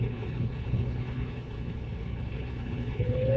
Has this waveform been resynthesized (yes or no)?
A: yes